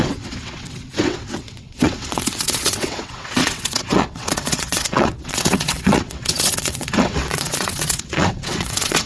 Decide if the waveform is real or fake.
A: fake